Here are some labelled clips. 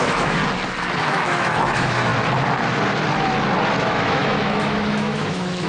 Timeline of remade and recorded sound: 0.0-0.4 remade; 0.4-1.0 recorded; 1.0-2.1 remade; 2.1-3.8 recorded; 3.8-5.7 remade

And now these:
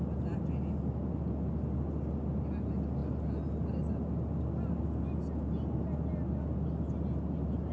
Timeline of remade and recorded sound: 0.0-7.7 recorded